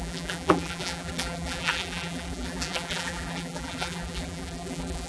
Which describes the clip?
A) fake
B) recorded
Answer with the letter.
A